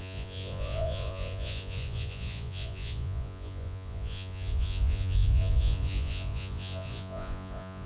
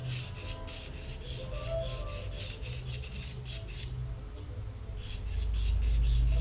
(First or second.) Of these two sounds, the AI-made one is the first